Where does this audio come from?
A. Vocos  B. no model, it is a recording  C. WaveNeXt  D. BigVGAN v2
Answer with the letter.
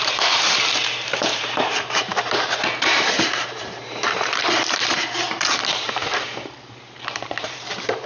D